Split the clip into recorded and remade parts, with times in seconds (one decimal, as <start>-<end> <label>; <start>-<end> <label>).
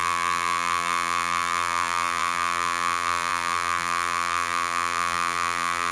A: 0.0-5.9 remade